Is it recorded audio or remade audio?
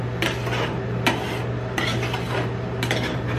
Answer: recorded